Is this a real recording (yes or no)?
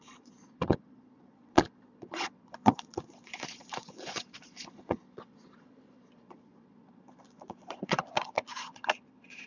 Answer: no